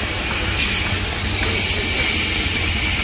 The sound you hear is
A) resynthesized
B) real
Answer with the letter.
B